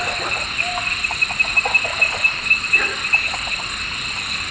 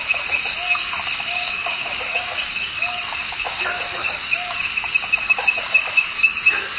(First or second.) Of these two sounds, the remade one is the second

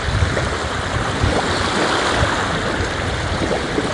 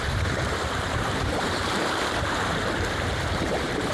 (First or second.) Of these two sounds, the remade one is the second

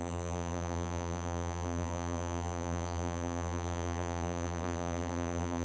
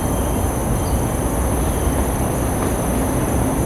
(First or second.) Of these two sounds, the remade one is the first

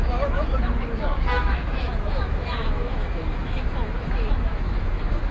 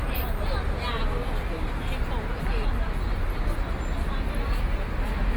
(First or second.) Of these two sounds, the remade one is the first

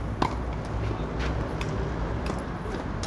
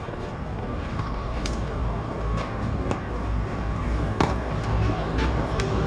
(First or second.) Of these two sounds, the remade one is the second